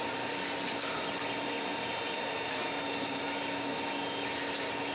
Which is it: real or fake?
real